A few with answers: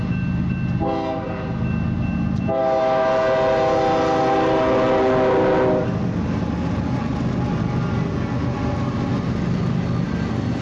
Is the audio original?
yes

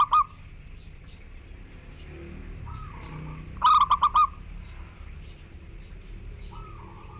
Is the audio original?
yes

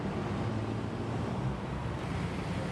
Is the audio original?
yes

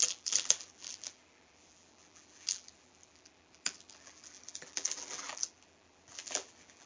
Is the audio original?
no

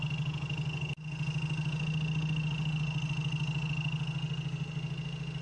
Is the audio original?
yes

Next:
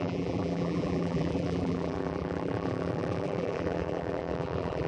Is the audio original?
no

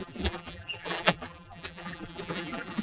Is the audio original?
no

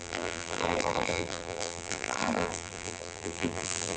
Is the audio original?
no